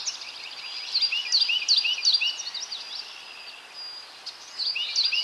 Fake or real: real